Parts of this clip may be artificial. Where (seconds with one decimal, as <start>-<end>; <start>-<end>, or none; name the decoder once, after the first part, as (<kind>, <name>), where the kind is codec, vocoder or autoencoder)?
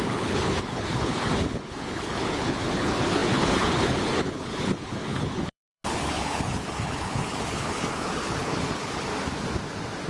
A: 0.0-9.1 (codec, HILCodec)